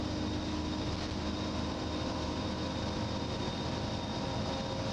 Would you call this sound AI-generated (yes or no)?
no